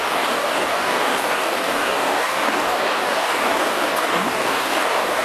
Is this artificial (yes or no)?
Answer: yes